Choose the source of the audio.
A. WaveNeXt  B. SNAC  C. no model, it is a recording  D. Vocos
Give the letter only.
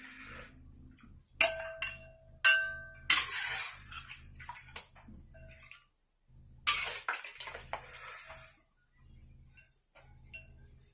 C